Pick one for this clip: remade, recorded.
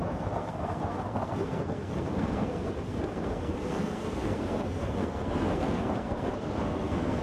remade